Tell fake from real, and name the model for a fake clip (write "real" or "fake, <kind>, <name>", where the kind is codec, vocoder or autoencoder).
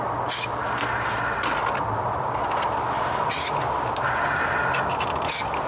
real